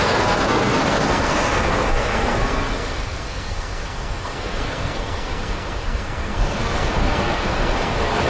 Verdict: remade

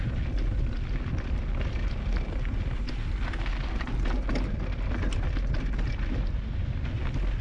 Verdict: recorded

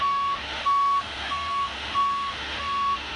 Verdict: remade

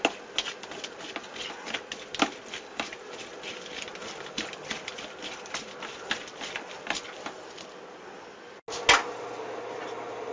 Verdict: recorded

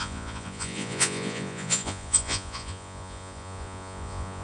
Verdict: remade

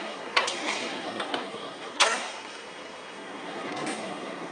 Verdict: remade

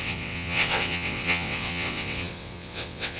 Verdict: remade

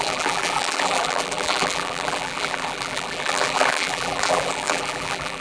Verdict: remade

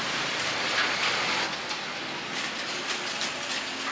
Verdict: recorded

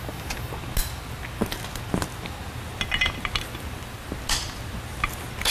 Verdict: recorded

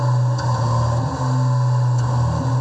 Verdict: recorded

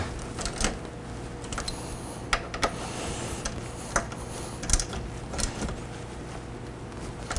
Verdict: recorded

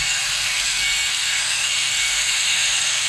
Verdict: remade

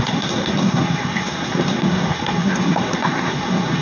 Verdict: remade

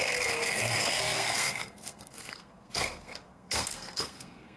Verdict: remade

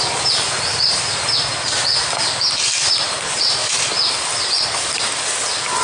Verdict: recorded